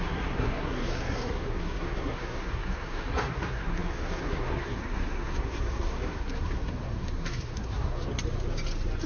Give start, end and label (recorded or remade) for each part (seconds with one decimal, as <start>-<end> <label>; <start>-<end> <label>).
0.0-8.1 remade; 8.1-9.1 recorded